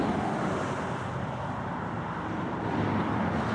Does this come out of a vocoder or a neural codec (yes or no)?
no